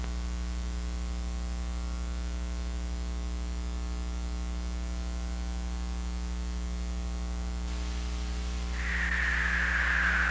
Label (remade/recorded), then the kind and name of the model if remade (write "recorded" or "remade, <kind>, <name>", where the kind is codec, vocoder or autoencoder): recorded